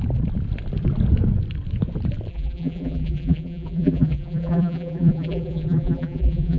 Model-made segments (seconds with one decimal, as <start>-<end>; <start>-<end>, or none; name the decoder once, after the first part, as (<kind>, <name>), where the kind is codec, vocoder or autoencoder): 2.3-6.6 (vocoder, BigVGAN v2)